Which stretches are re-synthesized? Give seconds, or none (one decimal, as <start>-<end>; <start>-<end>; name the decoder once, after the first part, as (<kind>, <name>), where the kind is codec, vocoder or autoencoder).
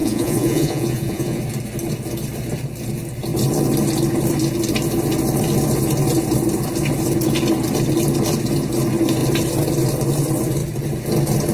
0.0-1.4 (vocoder, Vocos)